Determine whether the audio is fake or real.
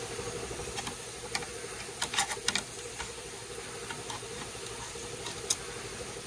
real